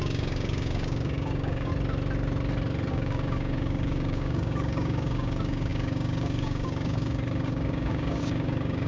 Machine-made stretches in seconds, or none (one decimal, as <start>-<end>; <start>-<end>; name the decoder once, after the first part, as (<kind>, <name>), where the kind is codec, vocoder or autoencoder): 0.0-1.7 (codec, DAC); 2.9-8.9